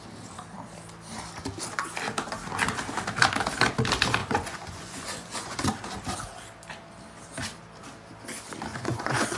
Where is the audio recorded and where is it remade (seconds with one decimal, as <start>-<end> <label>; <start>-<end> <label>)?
0.0-4.2 recorded; 4.2-5.6 remade; 5.6-8.7 recorded; 8.7-9.4 remade